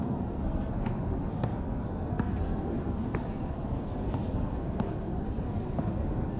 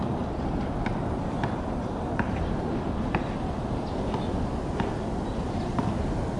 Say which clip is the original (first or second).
second